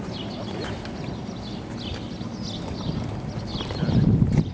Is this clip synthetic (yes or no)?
no